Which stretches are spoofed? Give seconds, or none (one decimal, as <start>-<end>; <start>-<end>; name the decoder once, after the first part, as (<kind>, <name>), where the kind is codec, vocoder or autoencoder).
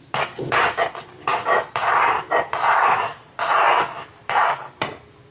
0.0-3.1 (vocoder, BigVGAN v2); 4.1-5.3